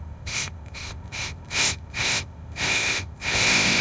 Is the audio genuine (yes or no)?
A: no